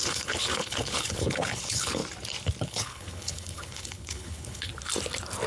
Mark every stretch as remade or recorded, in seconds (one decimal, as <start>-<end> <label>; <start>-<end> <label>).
0.0-2.0 remade; 2.0-2.6 recorded; 2.6-4.7 remade; 4.7-5.5 recorded

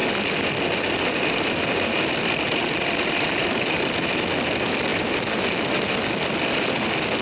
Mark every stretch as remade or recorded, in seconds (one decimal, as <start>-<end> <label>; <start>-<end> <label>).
0.0-7.2 recorded

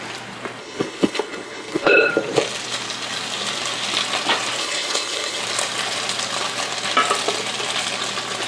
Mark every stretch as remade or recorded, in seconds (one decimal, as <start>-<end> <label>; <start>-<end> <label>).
0.0-0.6 recorded; 0.6-2.1 remade; 2.1-4.6 recorded; 4.6-5.4 remade; 5.4-8.5 recorded

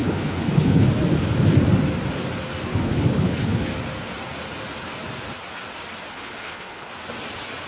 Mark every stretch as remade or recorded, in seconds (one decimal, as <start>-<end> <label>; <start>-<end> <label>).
0.0-0.9 remade; 0.9-2.7 recorded; 2.7-3.6 remade; 3.6-6.1 recorded; 6.1-6.9 remade; 6.9-7.7 recorded

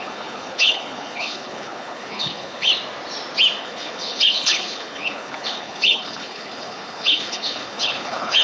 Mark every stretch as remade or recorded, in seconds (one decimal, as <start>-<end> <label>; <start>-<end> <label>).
0.0-2.7 remade; 2.7-3.6 recorded; 3.6-8.4 remade